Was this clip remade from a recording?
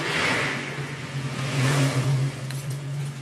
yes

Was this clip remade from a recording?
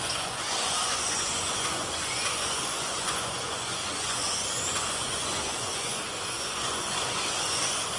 yes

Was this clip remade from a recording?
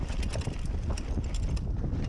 no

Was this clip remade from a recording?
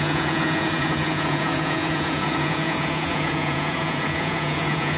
yes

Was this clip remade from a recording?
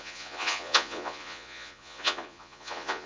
yes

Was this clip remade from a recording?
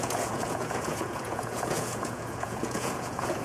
yes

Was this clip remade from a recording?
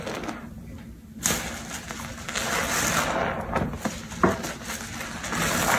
no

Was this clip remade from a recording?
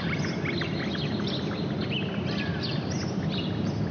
no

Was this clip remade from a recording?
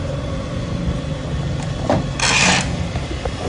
no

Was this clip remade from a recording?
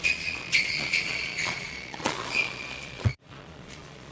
yes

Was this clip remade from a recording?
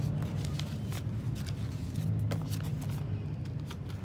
no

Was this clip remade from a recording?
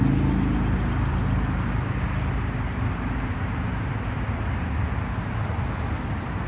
no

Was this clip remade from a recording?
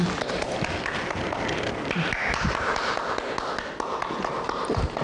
no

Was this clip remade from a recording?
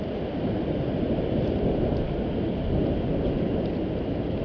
no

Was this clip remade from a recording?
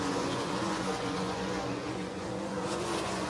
yes